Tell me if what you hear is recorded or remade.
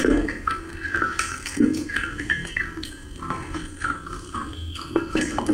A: remade